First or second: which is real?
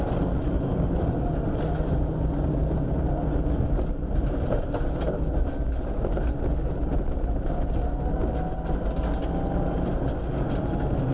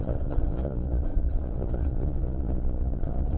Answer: first